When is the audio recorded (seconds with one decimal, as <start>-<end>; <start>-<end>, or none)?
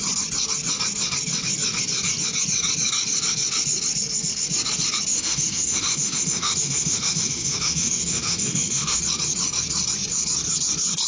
0.0-5.1; 9.0-11.1